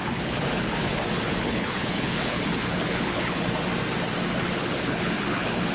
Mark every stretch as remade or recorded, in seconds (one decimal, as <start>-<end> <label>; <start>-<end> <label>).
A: 0.0-3.4 remade; 3.4-4.4 recorded; 4.4-5.7 remade